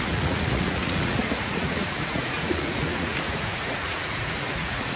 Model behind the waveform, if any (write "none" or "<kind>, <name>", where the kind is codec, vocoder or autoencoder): vocoder, Vocos